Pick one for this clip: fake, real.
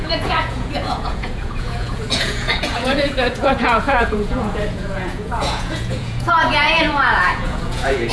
fake